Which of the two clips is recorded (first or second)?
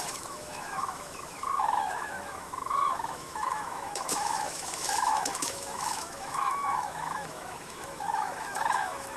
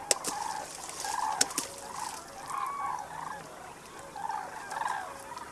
second